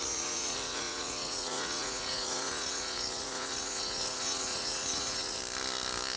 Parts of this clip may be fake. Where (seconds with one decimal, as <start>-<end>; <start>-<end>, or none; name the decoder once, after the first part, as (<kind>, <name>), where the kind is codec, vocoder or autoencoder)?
0.0-5.4 (vocoder, Vocos)